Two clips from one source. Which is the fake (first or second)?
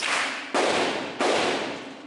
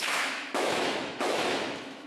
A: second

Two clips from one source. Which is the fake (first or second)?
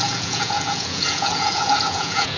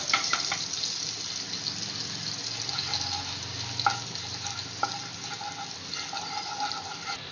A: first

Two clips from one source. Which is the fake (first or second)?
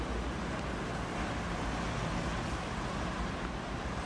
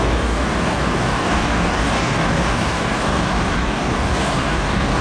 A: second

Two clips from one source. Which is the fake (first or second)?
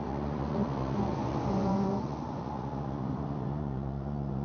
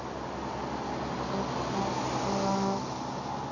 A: first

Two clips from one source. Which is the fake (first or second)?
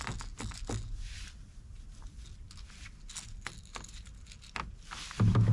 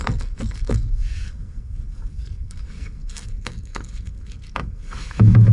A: second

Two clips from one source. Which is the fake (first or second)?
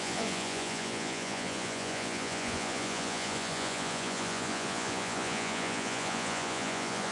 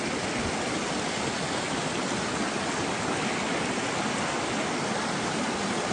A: first